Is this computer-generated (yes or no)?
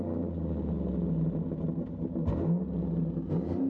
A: no